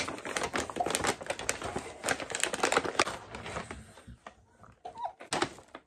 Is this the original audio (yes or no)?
yes